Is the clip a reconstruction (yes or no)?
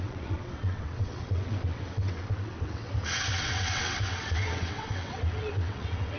yes